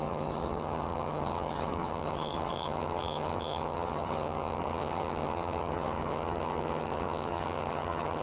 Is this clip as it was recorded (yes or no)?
no